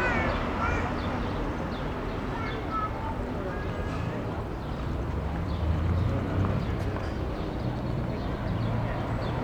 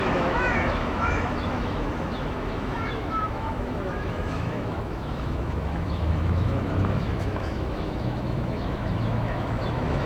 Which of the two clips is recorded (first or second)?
first